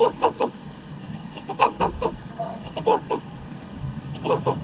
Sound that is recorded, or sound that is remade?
remade